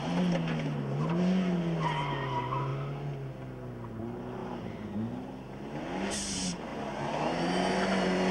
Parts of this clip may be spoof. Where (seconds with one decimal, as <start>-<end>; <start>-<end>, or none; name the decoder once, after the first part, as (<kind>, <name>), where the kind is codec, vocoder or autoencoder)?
none